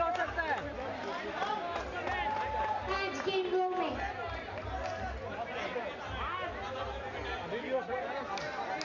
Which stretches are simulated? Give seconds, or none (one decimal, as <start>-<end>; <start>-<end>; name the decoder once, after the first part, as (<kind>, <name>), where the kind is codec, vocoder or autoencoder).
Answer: none